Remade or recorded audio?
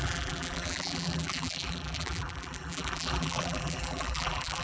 remade